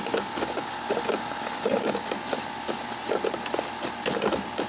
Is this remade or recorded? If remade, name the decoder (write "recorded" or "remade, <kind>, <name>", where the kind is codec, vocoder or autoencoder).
recorded